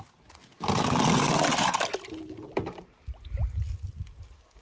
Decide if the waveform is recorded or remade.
recorded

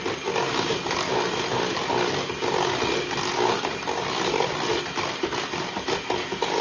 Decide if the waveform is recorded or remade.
recorded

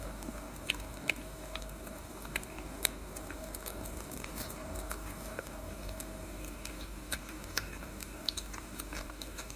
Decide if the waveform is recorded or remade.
remade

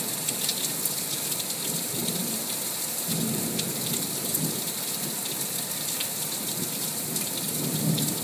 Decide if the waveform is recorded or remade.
remade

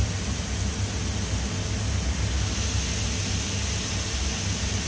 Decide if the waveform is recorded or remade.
recorded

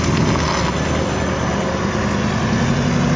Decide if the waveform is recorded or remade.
recorded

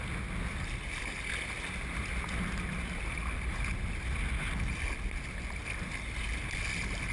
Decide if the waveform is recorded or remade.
recorded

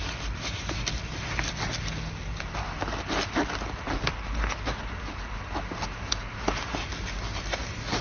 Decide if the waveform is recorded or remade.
recorded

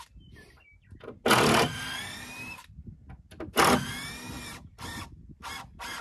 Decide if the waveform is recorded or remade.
recorded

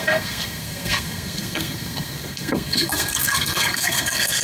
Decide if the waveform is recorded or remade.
remade